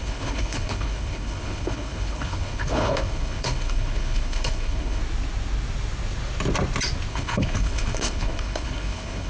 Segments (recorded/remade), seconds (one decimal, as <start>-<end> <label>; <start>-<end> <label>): 0.0-5.0 remade; 5.0-7.1 recorded; 7.1-9.3 remade